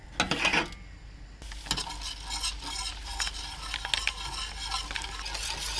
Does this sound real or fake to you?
real